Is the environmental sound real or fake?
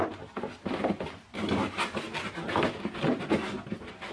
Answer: real